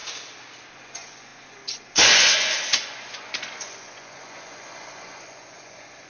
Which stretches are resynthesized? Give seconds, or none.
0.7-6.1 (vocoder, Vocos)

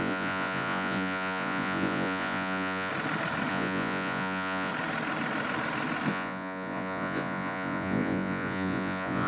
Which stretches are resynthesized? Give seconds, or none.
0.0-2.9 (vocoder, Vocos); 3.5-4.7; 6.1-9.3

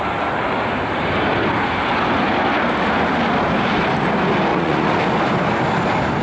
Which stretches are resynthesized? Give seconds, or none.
4.5-5.0 (vocoder, Vocos)

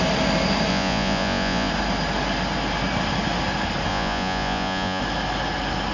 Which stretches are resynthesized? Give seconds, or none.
0.7-1.7 (vocoder, Vocos); 3.9-5.0

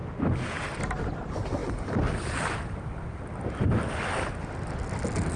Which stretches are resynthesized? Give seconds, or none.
none

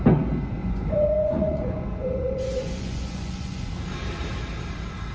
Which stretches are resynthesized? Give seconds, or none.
0.6-3.7 (vocoder, Vocos)

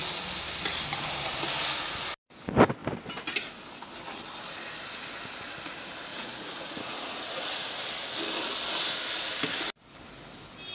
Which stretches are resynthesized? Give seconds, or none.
6.1-7.8 (vocoder, Vocos)